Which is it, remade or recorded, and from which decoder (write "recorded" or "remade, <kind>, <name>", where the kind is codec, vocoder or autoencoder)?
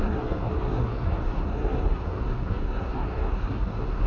remade, codec, SNAC